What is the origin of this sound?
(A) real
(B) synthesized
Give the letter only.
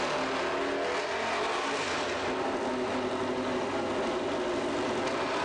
A